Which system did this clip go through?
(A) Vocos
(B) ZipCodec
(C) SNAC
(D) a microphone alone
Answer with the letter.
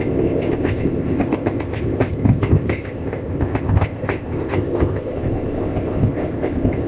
B